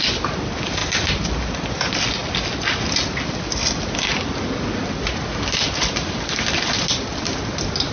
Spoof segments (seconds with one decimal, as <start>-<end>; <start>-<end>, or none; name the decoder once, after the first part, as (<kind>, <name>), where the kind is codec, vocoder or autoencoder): none